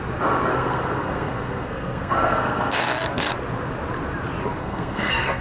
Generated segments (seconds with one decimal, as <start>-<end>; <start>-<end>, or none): 0.5-3.3; 4.6-5.4